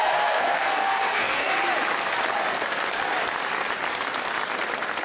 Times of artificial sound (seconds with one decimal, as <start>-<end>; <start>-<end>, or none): 0.0-1.6; 2.5-3.0